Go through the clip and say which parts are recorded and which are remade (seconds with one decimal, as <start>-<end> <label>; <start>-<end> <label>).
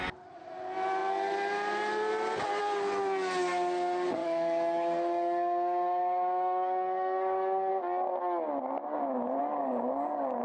0.0-4.2 recorded; 4.2-7.7 remade; 7.7-9.4 recorded; 9.4-10.4 remade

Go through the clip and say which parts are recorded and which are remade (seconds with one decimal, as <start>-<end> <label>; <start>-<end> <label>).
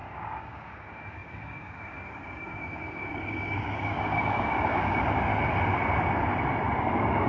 0.0-5.3 remade; 5.3-6.8 recorded; 6.8-7.3 remade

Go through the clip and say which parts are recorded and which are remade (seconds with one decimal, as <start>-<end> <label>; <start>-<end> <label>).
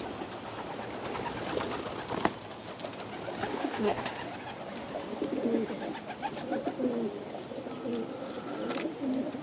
0.0-3.5 recorded; 3.5-4.0 remade; 4.0-9.4 recorded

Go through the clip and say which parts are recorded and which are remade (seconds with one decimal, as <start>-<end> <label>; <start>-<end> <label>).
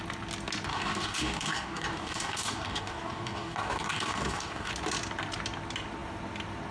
0.0-0.7 recorded; 0.7-4.7 remade; 4.7-6.7 recorded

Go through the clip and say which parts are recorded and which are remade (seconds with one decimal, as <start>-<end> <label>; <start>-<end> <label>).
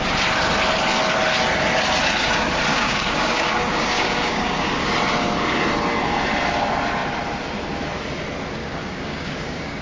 0.0-2.7 recorded; 2.7-4.9 remade; 4.9-8.6 recorded; 8.6-9.8 remade